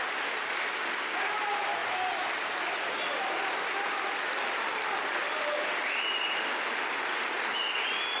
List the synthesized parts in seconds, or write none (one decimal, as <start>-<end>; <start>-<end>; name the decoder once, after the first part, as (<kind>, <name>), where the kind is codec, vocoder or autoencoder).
none